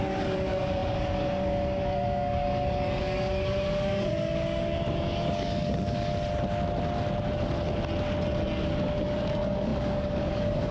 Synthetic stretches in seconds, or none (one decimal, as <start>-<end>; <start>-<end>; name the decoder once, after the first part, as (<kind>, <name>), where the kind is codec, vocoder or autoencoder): 0.0-6.1 (codec, DAC); 8.7-10.7